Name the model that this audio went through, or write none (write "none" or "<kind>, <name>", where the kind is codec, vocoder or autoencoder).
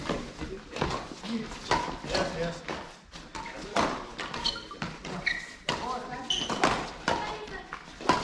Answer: none